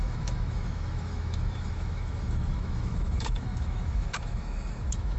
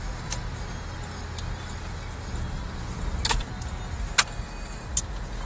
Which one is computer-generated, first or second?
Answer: first